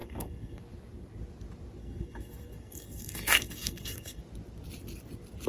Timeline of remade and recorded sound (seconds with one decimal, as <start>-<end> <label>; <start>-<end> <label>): 0.0-0.6 remade; 0.6-1.8 recorded; 1.8-4.2 remade; 4.2-5.5 recorded